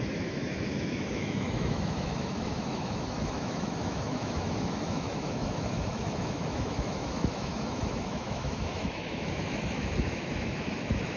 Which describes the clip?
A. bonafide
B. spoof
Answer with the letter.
B